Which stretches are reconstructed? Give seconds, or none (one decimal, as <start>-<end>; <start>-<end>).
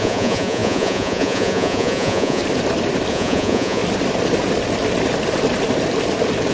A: 0.0-2.4; 3.1-3.8